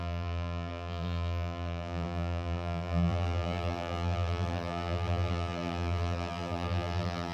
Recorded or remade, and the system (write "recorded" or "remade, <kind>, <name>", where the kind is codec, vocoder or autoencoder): remade, vocoder, BigVGAN v2